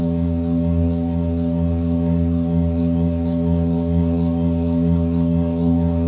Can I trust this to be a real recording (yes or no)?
no